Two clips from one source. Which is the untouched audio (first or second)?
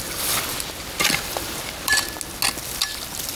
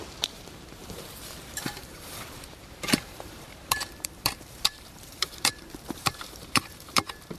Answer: first